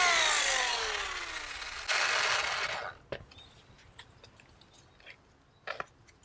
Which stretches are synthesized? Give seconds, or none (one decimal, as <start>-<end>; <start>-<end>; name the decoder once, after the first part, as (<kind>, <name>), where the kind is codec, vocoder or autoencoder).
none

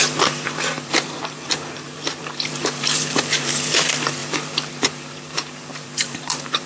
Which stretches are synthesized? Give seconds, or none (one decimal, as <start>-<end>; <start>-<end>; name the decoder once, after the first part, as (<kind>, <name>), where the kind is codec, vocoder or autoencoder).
0.0-6.7 (vocoder, BigVGAN v2)

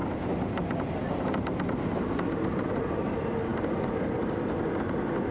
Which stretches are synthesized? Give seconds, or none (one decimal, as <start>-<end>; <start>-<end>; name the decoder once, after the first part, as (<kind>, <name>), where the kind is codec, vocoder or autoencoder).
0.0-2.6 (vocoder, BigVGAN v2)